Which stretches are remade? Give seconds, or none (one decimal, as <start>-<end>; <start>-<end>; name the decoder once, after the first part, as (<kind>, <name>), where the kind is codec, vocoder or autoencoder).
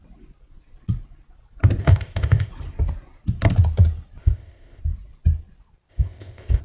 1.8-2.5 (codec, ZipCodec); 4.2-4.8; 5.9-6.6